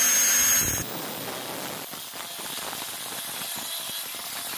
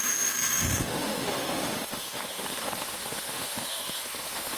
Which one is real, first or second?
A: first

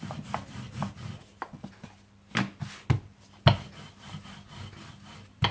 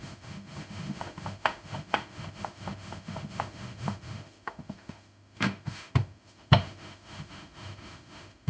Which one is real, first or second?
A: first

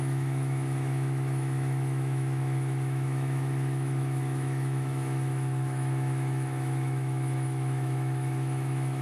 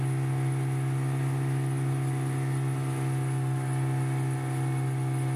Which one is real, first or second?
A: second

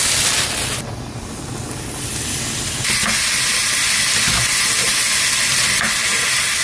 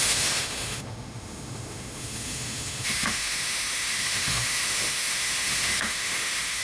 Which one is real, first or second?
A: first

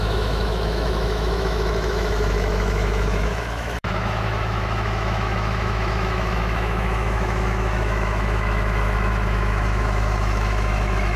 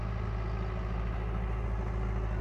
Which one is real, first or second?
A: second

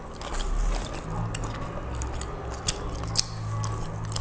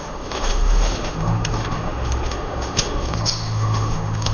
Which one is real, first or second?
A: first